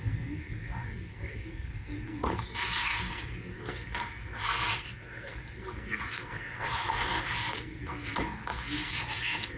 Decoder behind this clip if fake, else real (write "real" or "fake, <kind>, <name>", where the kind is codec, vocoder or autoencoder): fake, codec, SNAC